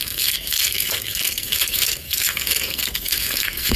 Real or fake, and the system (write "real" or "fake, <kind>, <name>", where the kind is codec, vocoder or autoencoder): fake, codec, SNAC